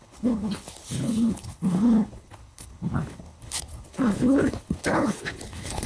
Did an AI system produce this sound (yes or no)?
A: yes